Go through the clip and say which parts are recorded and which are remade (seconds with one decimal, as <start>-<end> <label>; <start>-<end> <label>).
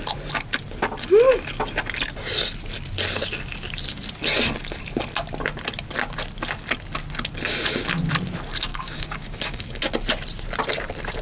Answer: 0.0-8.7 recorded; 8.7-9.8 remade; 9.8-11.2 recorded